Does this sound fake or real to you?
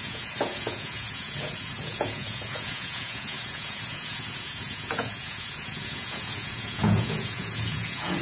fake